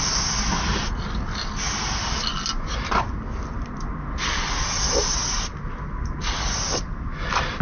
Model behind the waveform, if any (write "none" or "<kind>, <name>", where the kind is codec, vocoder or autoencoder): none